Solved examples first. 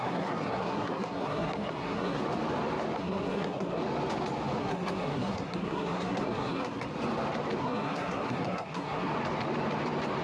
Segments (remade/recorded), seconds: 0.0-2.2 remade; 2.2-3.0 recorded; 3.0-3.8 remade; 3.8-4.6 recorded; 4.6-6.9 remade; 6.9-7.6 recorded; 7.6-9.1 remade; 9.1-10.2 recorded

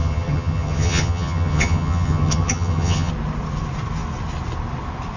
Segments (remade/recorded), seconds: 0.0-3.1 remade; 3.1-5.2 recorded

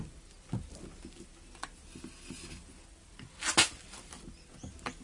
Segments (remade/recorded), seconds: 0.0-5.0 recorded

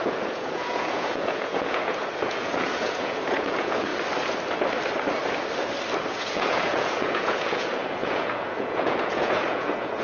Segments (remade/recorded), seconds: 0.0-3.9 remade; 3.9-6.1 recorded; 6.1-10.0 remade